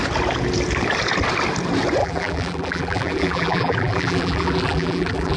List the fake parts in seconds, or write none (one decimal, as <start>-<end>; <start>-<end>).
2.0-5.4

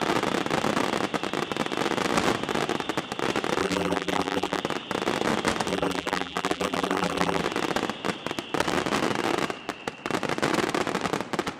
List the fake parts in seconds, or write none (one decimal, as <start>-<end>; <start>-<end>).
3.6-4.6; 5.7-7.4